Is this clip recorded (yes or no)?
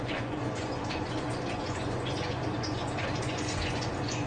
no